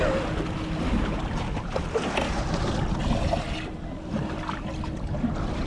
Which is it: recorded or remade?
recorded